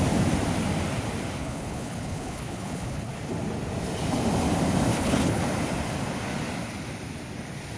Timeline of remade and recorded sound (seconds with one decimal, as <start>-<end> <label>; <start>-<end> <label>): 0.0-1.4 recorded; 1.4-3.1 remade; 3.1-4.9 recorded; 4.9-5.4 remade; 5.4-7.8 recorded